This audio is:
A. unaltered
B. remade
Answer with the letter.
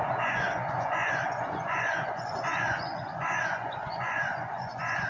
B